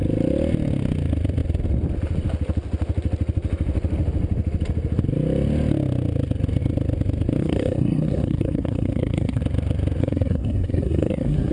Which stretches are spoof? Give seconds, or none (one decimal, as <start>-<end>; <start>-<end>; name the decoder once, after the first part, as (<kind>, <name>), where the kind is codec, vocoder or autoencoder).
7.4-9.4 (codec, SNAC); 10.0-11.5